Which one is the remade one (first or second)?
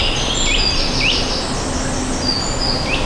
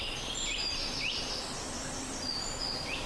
second